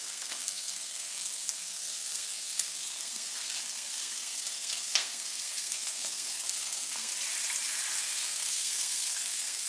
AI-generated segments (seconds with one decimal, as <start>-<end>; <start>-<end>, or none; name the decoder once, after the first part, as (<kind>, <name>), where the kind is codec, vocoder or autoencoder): 0.0-7.1 (codec, SNAC); 8.0-9.7